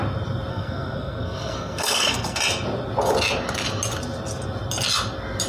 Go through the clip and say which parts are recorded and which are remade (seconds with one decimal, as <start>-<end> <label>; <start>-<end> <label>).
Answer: 0.0-0.5 recorded; 0.5-2.4 remade; 2.4-5.5 recorded